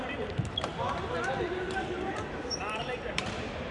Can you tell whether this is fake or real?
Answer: fake